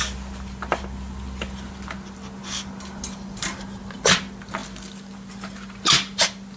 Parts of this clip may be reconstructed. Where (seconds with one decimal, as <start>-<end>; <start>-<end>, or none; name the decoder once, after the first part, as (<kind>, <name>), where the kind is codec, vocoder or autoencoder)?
none